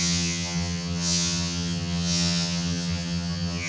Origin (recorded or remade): remade